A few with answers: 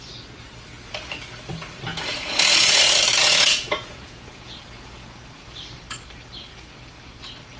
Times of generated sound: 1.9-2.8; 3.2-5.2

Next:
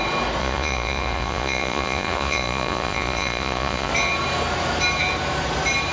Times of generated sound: 0.4-3.9

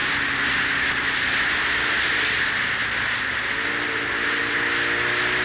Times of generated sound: none

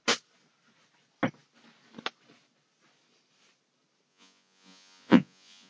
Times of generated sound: 4.1-5.7